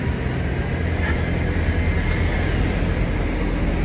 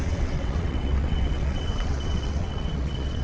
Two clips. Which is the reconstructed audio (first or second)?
second